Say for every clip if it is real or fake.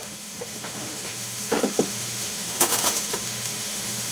fake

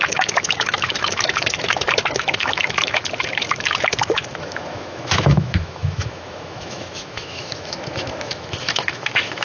fake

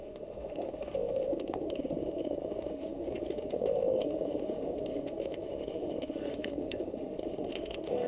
fake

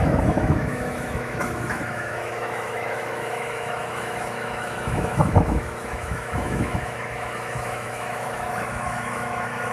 fake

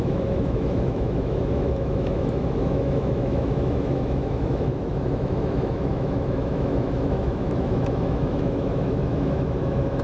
fake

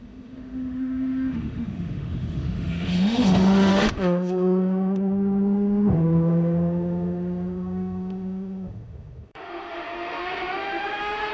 fake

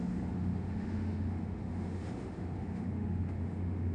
fake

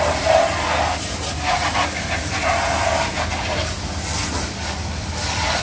real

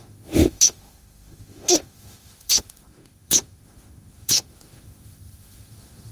fake